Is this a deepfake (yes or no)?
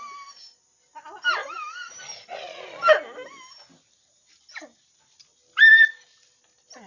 no